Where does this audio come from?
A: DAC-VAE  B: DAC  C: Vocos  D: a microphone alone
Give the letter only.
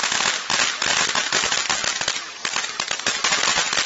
D